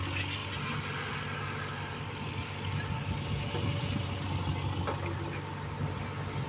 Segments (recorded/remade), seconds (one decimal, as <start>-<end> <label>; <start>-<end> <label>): 0.0-6.5 recorded